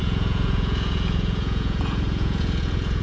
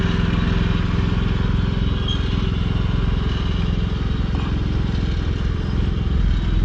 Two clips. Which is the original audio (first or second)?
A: second